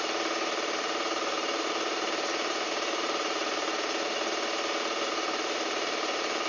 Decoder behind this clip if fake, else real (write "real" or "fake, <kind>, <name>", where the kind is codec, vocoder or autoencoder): fake, vocoder, BigVGAN v2